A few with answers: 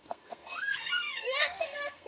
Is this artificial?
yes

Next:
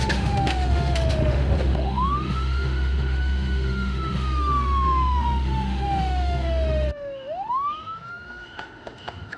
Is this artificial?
yes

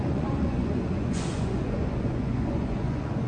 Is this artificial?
yes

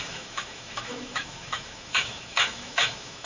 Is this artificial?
yes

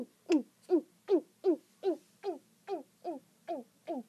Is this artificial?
no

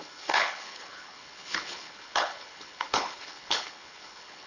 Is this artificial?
yes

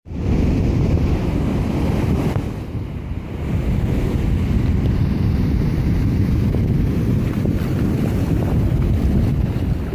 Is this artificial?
no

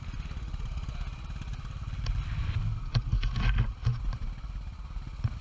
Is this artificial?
no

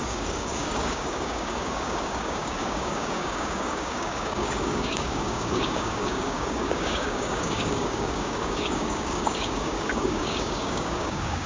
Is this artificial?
yes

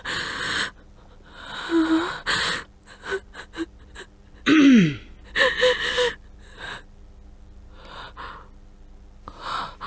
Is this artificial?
no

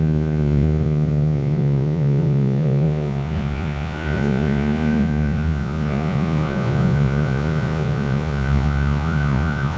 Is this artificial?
yes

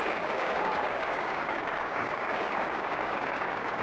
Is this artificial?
yes